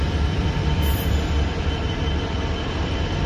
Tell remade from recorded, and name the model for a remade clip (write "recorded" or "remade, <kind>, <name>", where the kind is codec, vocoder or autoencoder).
remade, vocoder, BigVGAN v2